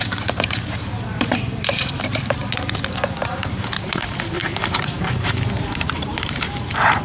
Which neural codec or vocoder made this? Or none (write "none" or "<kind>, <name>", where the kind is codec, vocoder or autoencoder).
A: vocoder, BigVGAN v2